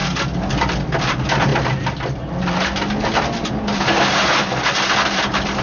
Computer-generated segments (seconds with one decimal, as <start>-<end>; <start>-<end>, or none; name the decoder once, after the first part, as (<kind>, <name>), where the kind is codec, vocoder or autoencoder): none